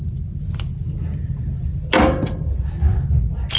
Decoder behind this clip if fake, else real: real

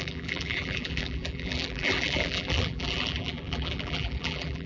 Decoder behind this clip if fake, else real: fake, vocoder, BigVGAN v2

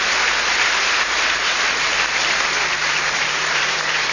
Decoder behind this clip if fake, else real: fake, vocoder, BigVGAN v2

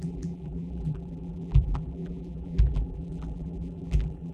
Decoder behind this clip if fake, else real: fake, vocoder, BigVGAN v2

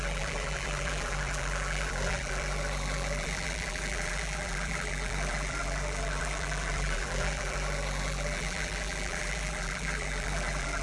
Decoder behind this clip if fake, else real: fake, vocoder, BigVGAN v2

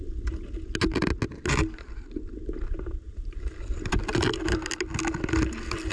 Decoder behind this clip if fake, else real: real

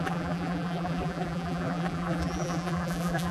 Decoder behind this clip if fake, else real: fake, vocoder, BigVGAN v2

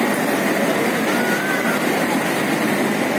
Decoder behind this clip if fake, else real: real